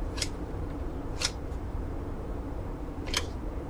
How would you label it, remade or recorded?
remade